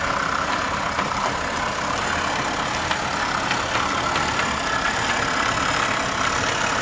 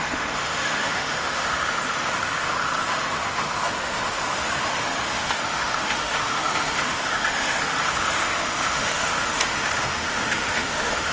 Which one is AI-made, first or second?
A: second